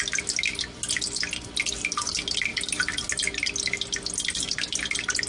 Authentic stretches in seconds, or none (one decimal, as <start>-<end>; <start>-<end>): 0.0-5.3

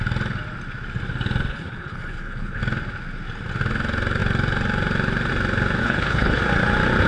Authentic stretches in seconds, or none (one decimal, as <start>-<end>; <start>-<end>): 0.0-1.5; 2.6-5.8; 6.4-7.1

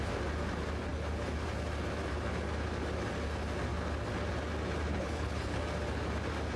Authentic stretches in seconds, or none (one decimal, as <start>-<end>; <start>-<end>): 0.0-4.9; 5.6-6.6

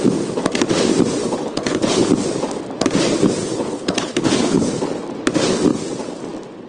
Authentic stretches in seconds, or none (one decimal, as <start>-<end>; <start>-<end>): 0.0-1.2; 2.1-3.4; 4.7-6.7

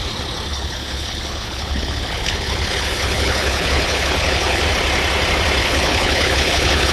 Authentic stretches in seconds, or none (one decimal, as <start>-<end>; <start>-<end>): 0.0-0.5; 4.6-5.6

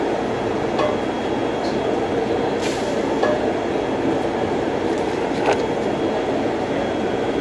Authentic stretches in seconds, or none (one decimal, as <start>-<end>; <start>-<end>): 0.0-7.4

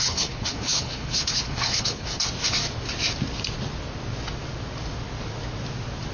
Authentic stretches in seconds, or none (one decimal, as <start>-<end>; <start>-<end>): 2.1-6.1

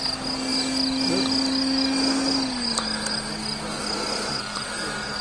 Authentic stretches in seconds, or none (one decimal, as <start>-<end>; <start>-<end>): 0.0-5.2